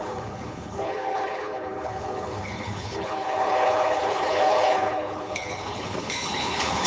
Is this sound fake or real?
fake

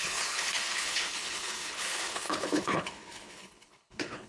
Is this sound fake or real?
fake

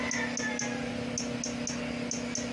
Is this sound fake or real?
real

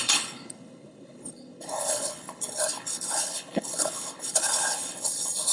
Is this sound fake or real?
fake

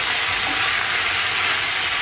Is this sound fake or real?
real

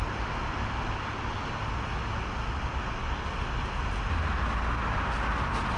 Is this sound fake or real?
real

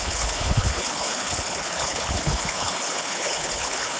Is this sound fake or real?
fake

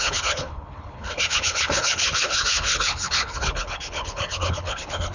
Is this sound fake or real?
fake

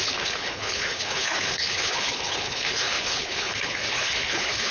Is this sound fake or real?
fake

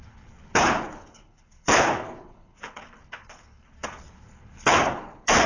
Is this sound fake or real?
fake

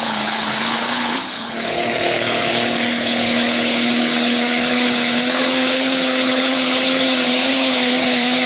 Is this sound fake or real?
fake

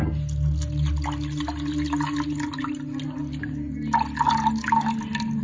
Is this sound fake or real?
real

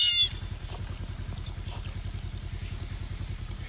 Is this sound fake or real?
real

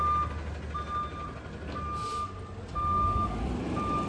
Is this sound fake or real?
real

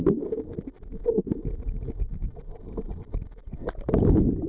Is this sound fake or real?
real